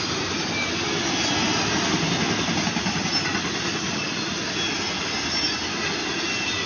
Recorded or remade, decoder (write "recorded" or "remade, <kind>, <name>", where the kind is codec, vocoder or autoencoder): recorded